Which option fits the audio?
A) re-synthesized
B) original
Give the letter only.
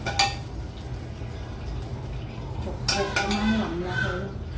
B